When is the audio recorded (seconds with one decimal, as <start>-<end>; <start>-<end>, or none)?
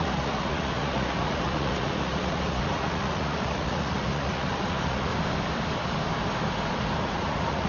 5.1-7.0